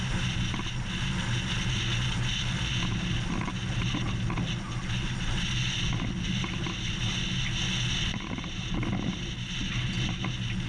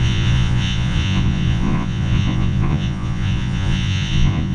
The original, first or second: first